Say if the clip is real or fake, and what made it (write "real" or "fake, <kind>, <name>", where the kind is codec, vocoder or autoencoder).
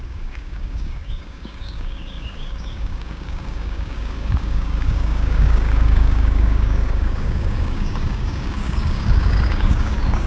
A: fake, codec, DAC